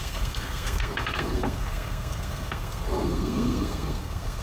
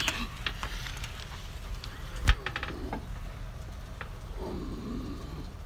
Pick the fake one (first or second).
first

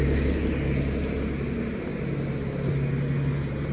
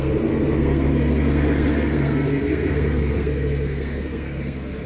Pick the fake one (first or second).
second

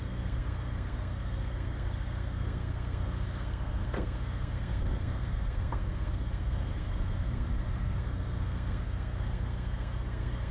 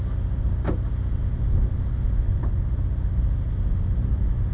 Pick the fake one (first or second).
first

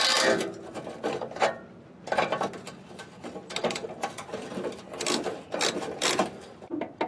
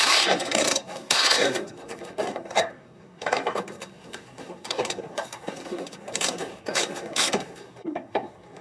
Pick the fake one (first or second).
second